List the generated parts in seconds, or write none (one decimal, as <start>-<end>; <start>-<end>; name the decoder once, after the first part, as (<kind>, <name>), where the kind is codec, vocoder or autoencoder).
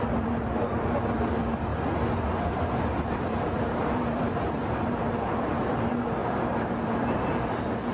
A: 0.0-1.7 (vocoder, BigVGAN v2); 2.5-7.9